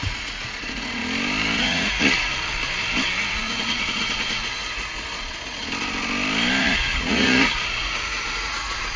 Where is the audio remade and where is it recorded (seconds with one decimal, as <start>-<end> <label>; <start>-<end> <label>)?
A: 0.0-1.0 remade; 1.0-1.6 recorded; 1.6-2.3 remade; 2.3-3.3 recorded; 3.3-5.6 remade; 5.6-6.6 recorded; 6.6-9.0 remade